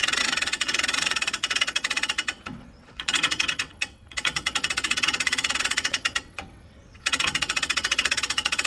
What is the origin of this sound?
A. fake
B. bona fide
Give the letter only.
A